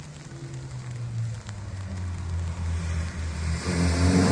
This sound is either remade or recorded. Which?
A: recorded